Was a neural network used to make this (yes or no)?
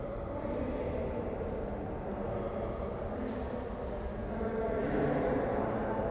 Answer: no